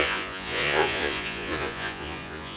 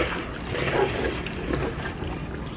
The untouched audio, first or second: second